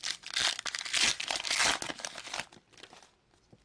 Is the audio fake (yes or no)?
no